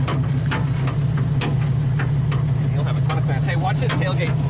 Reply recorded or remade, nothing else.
recorded